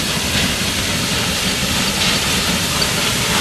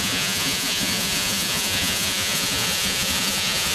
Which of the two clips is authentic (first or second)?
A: first